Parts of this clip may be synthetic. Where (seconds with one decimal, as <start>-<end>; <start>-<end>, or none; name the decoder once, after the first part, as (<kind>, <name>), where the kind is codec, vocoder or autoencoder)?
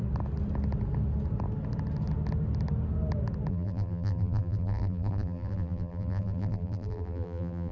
3.5-7.7 (vocoder, BigVGAN v2)